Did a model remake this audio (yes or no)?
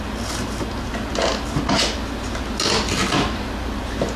no